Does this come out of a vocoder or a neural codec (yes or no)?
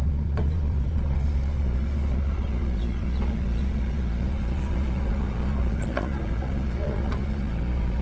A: yes